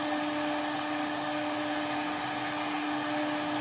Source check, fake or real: real